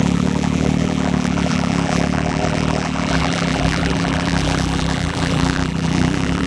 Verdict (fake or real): fake